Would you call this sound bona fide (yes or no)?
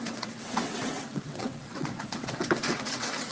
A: no